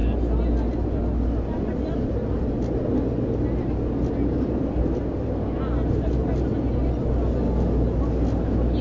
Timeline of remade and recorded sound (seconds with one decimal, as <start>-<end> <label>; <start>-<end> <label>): 0.0-8.8 recorded